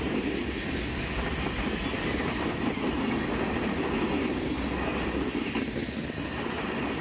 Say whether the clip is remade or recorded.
recorded